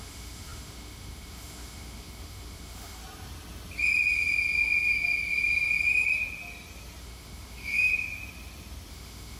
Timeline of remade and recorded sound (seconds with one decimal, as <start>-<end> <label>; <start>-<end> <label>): 0.0-3.0 remade; 3.0-7.0 recorded; 7.0-7.9 remade; 7.9-8.9 recorded; 8.9-9.4 remade